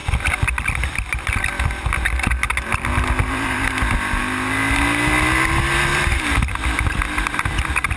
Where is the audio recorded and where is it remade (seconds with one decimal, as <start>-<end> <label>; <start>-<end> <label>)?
0.0-1.5 remade; 1.5-5.9 recorded; 5.9-6.5 remade; 6.5-8.0 recorded